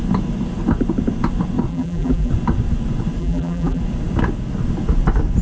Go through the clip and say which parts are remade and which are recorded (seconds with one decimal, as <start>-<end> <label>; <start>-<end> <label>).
0.0-1.7 recorded; 1.7-2.3 remade; 2.3-3.2 recorded; 3.2-3.8 remade; 3.8-5.4 recorded